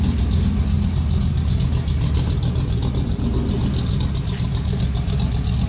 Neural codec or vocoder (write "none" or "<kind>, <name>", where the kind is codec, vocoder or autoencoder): none